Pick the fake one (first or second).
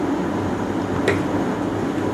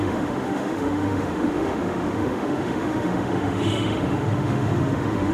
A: second